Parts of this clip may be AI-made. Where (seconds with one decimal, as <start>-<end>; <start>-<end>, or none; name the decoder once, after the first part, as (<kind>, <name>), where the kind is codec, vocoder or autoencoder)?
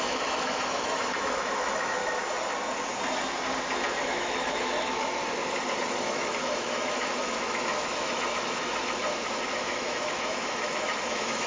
0.0-2.0 (autoencoder, DAC-VAE); 4.0-5.2; 5.8-9.0; 9.5-11.5